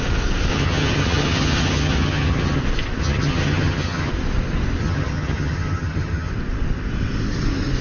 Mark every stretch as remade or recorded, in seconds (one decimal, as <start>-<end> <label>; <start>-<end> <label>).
0.0-0.5 recorded; 0.5-2.6 remade; 2.6-3.0 recorded; 3.0-4.1 remade; 4.1-4.8 recorded; 4.8-6.3 remade; 6.3-7.8 recorded